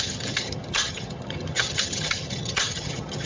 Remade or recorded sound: remade